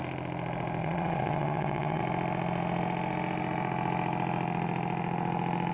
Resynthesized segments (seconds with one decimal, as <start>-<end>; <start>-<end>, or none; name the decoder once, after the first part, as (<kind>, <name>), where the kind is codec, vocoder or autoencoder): 0.8-2.0 (vocoder, Vocos)

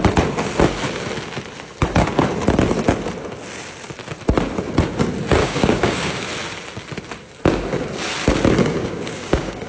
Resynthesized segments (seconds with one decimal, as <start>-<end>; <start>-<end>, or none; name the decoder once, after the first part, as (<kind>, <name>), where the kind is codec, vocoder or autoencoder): 5.4-6.2 (codec, DAC); 8.6-9.7

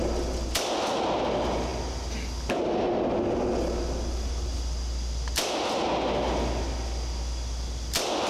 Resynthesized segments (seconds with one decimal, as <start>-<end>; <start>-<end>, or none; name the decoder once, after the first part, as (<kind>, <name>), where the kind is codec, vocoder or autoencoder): none

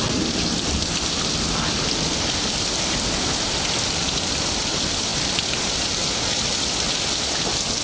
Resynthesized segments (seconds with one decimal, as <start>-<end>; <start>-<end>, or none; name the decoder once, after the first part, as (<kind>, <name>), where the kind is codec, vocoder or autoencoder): 0.0-7.8 (vocoder, BigVGAN v2)

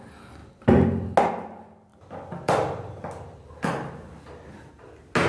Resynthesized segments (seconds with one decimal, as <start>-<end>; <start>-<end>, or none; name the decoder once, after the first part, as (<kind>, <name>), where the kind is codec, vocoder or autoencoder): 1.9-4.7 (vocoder, BigVGAN v2)

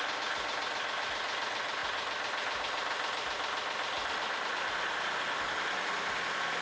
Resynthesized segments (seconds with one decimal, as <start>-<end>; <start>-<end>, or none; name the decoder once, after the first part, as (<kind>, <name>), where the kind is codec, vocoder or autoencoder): none

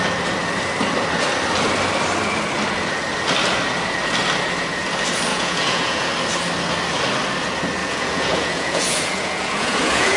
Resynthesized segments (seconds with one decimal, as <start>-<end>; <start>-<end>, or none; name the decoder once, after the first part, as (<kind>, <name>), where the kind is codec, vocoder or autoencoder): 5.3-6.1 (vocoder, Vocos); 7.8-10.2